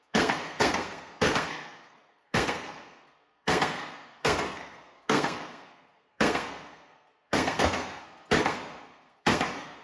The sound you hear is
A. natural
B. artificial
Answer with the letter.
B